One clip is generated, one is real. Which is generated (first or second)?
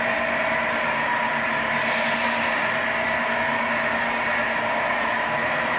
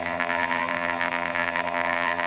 second